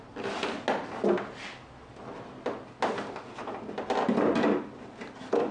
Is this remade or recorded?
recorded